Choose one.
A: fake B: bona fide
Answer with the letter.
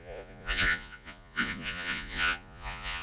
A